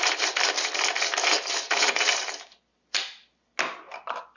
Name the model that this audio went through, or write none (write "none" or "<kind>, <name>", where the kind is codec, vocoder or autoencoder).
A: none